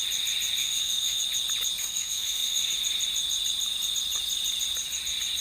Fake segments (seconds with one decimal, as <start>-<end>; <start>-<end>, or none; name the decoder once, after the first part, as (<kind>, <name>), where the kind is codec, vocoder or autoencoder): 0.6-1.2 (autoencoder, DAC-VAE); 1.8-2.7